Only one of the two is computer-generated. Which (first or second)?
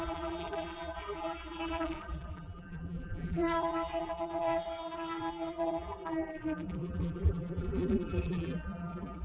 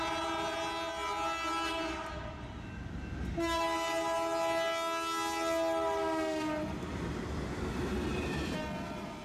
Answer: first